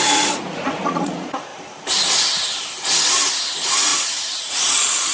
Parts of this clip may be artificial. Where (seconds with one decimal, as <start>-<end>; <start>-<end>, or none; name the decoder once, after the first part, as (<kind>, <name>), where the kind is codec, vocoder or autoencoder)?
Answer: 0.0-1.5 (vocoder, Vocos); 3.3-5.1